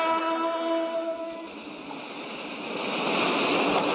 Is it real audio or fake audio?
real